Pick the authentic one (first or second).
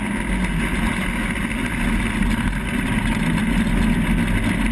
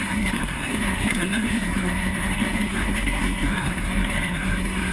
first